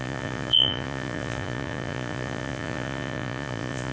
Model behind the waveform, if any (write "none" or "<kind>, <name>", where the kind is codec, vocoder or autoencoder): vocoder, Vocos